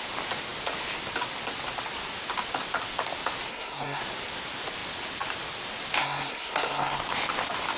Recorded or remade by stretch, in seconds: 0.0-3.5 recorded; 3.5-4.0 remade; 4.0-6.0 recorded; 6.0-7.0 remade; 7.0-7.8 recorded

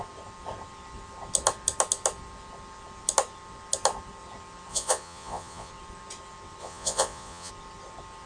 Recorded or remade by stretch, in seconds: 0.0-4.7 recorded; 4.7-5.7 remade; 5.7-6.6 recorded; 6.6-7.5 remade; 7.5-8.3 recorded